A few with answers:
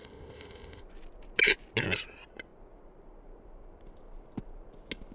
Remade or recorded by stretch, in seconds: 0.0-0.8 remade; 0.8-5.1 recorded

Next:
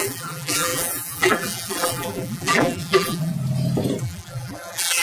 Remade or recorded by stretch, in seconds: 0.0-3.3 remade; 3.3-4.0 recorded; 4.0-5.0 remade

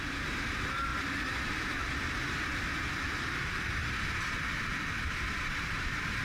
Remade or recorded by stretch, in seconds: 0.0-6.2 recorded